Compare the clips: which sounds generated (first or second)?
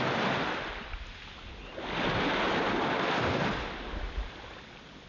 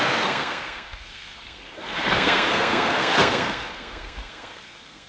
second